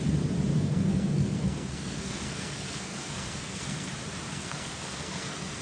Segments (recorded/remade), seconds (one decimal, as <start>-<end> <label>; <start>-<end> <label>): 0.0-0.5 recorded; 0.5-3.9 remade; 3.9-4.3 recorded; 4.3-5.6 remade